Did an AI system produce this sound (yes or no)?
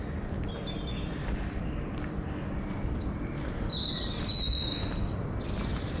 no